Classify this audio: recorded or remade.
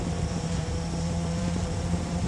remade